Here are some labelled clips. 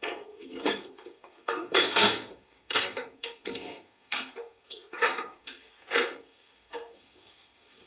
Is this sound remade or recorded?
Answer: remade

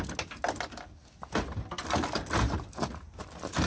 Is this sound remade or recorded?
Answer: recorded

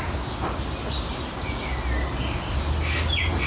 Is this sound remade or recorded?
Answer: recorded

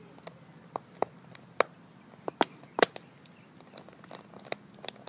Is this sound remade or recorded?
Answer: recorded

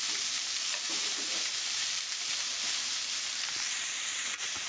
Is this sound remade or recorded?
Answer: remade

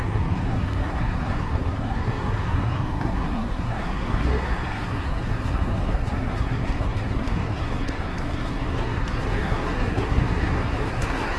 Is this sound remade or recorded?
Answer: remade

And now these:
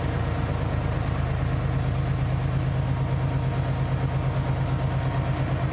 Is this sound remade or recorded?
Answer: recorded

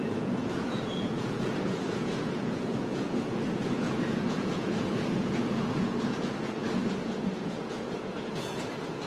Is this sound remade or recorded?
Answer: remade